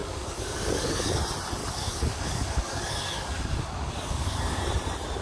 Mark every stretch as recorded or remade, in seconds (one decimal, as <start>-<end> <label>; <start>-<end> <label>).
0.0-1.2 remade; 1.2-1.6 recorded; 1.6-4.7 remade; 4.7-5.2 recorded